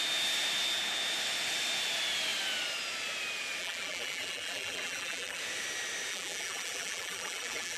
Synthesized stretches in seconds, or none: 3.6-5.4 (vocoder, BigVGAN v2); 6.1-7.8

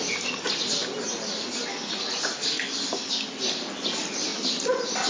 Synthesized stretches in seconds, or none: none

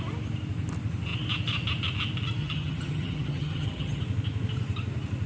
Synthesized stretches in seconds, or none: 2.4-4.0 (vocoder, HiFi-GAN)

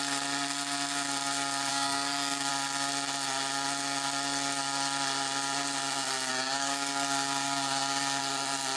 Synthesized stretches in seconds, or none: 1.7-2.5 (codec, SNAC); 6.3-8.2

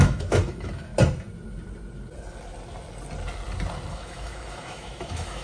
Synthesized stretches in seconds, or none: 0.0-0.9 (autoencoder, DAC-VAE); 3.9-5.4